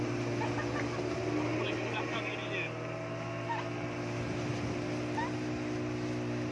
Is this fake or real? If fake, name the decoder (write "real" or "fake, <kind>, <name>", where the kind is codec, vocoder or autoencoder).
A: real